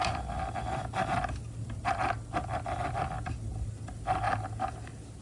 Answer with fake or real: real